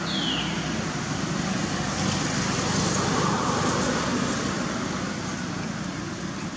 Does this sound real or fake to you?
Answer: real